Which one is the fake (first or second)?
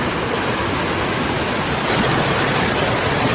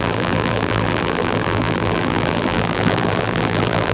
second